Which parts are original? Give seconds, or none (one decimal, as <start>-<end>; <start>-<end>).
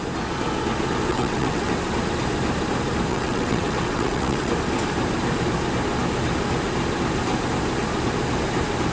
0.0-1.1; 1.7-3.1; 4.5-8.9